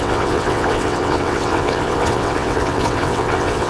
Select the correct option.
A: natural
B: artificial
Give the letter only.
B